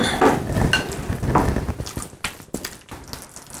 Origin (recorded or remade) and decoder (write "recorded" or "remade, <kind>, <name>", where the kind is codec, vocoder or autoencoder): recorded